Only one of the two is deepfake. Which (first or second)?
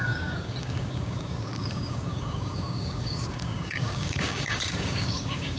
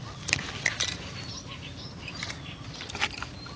first